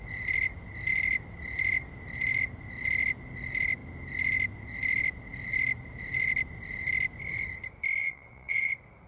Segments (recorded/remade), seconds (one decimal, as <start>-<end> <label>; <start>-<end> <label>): 0.0-8.0 recorded; 8.0-8.7 remade; 8.7-9.1 recorded